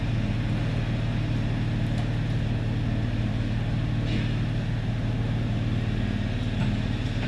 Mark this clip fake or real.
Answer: real